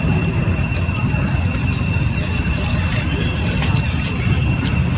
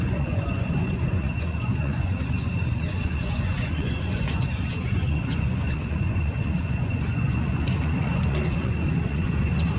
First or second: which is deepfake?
second